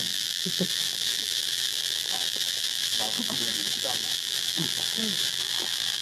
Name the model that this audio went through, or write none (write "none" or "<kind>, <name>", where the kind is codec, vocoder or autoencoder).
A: vocoder, BigVGAN v2